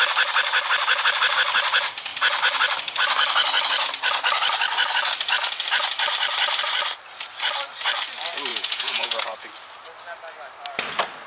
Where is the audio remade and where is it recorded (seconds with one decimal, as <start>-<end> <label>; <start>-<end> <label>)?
0.0-8.5 recorded; 8.5-9.5 remade; 9.5-11.3 recorded